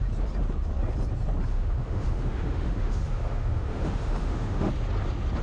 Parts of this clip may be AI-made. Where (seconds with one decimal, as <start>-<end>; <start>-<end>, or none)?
1.5-4.7